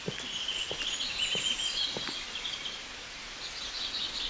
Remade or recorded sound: recorded